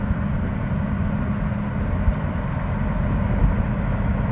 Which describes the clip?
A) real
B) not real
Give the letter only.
A